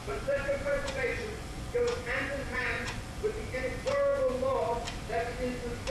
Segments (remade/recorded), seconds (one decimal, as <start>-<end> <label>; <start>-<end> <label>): 0.0-3.2 remade; 3.2-5.9 recorded